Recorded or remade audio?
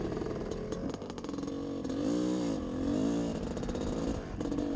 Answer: recorded